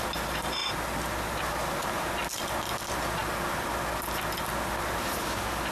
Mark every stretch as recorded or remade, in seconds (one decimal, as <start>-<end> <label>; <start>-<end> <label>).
0.0-0.6 recorded; 0.6-1.8 remade; 1.8-5.7 recorded